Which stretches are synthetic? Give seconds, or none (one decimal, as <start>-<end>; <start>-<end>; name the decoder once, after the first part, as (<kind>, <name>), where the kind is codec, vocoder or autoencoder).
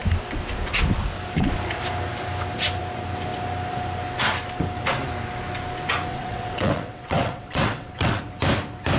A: 6.1-8.2 (vocoder, WaveNeXt)